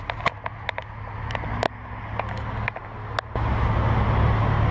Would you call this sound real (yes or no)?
yes